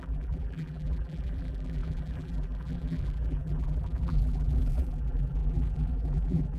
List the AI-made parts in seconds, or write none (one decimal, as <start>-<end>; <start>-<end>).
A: 0.0-6.6